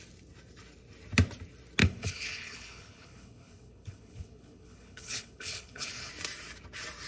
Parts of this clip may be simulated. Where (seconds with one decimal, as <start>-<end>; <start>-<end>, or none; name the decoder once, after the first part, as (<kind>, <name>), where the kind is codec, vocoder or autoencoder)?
1.8-6.1 (codec, HILCodec)